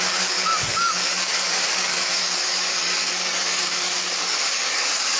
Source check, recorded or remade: remade